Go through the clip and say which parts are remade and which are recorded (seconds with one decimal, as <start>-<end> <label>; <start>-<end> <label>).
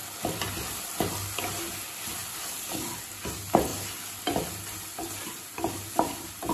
0.0-6.5 recorded